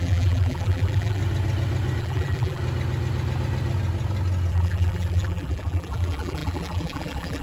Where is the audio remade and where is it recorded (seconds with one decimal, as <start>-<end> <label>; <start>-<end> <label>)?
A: 0.0-1.2 remade; 1.2-2.0 recorded; 2.0-2.6 remade; 2.6-4.5 recorded; 4.5-7.4 remade